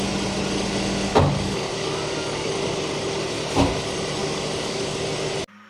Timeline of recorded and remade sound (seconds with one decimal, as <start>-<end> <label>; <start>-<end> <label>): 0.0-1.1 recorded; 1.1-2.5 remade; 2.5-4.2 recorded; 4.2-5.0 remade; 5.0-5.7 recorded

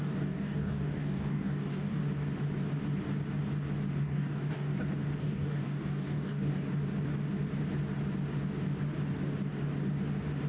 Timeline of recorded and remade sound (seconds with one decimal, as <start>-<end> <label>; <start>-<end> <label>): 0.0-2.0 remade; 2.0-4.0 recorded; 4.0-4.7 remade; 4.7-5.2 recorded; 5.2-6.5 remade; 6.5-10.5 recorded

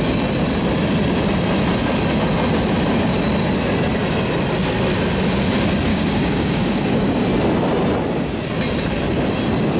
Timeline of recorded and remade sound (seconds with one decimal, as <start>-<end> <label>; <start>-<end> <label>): 0.0-5.9 recorded; 5.9-7.2 remade; 7.2-9.8 recorded

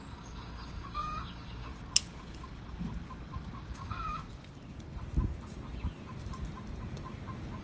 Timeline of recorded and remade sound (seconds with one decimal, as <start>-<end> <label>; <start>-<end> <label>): 0.0-1.7 remade; 1.7-3.7 recorded; 3.7-4.2 remade; 4.2-7.6 recorded

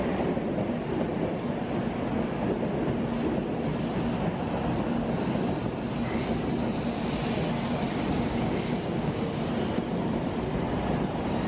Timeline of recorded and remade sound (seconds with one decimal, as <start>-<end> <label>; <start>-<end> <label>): 0.0-8.1 recorded; 8.1-9.3 remade; 9.3-11.5 recorded

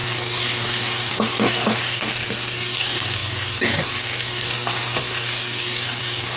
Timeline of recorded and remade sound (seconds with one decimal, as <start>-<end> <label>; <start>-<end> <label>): 0.0-6.4 remade

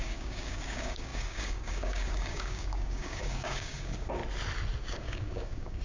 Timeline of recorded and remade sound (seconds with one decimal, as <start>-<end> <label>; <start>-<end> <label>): 0.0-4.2 remade; 4.2-4.8 recorded; 4.8-5.8 remade